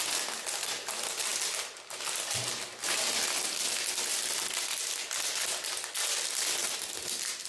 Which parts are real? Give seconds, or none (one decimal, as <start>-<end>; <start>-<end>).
0.0-6.6; 7.1-7.5